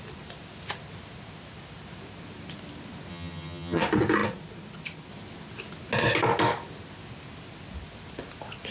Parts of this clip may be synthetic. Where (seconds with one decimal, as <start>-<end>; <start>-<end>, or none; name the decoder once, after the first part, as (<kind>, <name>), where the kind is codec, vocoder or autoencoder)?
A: 3.1-3.8 (vocoder, HiFi-GAN)